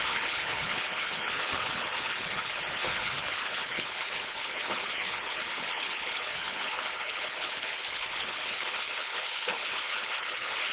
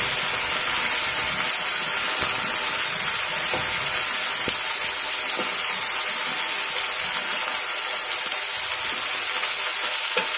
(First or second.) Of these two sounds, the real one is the second